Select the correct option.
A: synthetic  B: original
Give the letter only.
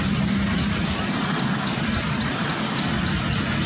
B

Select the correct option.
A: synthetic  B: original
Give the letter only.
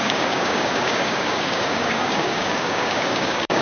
A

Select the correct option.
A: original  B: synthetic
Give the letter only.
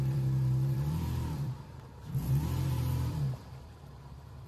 B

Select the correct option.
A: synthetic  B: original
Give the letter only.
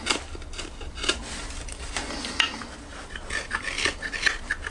B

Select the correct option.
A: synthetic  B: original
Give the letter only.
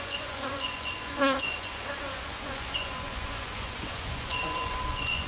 A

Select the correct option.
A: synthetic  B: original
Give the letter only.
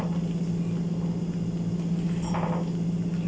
B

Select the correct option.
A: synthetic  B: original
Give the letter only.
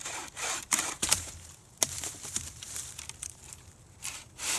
A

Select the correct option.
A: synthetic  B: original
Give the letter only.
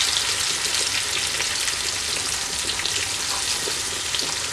B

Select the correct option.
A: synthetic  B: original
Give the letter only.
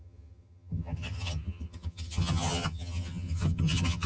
A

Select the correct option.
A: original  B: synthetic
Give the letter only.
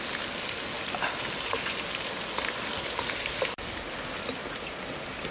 A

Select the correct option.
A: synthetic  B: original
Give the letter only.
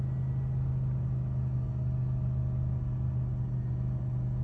B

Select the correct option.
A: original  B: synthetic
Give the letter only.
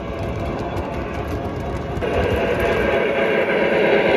A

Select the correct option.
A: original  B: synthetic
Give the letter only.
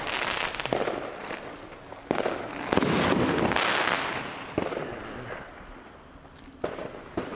A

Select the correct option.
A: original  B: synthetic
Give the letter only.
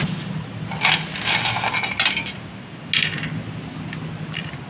A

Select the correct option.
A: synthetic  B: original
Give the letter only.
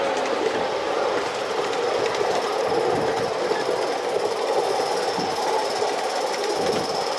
B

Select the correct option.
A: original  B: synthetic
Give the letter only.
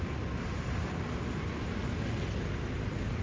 A